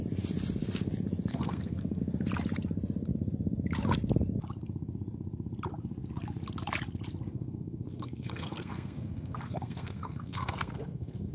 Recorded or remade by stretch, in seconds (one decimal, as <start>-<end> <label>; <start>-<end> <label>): 0.0-1.3 recorded; 1.3-2.0 remade; 2.0-7.3 recorded; 7.3-11.3 remade